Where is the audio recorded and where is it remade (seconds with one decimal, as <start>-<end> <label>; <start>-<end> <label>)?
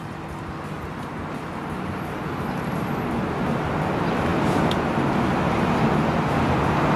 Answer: 0.0-7.0 recorded